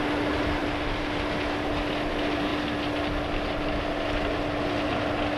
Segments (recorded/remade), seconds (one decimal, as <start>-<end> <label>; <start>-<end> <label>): 0.0-5.4 recorded